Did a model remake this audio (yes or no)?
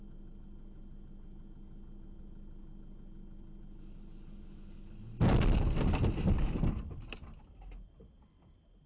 no